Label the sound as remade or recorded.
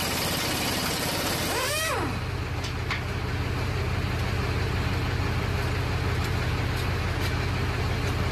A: recorded